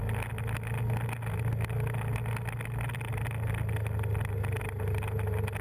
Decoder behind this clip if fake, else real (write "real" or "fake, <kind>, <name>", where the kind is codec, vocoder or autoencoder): real